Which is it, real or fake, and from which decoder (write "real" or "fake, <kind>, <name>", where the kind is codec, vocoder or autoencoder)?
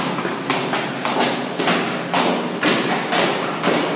real